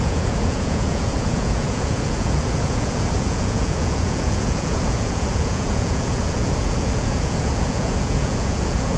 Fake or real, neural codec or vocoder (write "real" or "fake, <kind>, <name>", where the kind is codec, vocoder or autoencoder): fake, vocoder, Vocos